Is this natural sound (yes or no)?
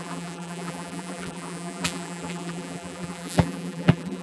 no